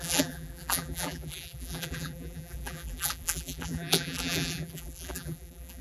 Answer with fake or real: fake